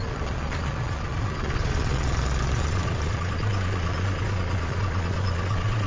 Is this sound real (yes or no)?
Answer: no